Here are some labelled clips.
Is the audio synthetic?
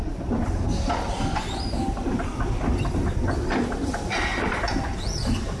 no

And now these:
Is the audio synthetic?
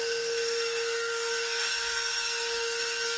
yes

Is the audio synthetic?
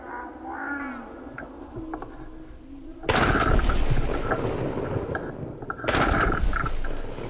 no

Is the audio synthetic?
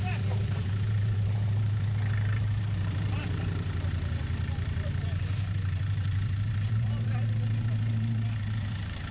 yes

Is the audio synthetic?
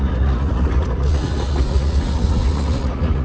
yes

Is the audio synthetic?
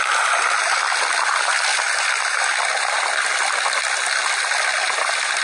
no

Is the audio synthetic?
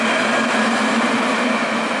no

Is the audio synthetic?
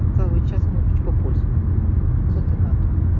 no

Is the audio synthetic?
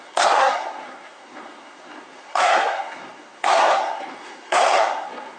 yes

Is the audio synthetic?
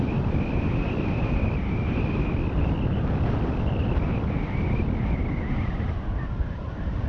no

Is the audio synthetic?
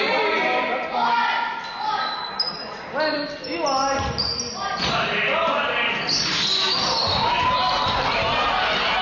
no